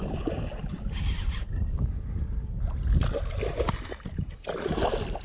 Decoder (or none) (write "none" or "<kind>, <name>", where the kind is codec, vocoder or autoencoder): none